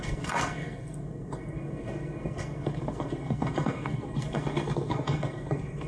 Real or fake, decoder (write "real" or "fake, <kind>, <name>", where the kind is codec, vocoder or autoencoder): fake, codec, SNAC